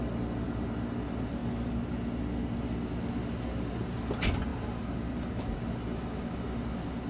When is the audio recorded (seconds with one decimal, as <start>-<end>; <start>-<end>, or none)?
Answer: 0.0-7.1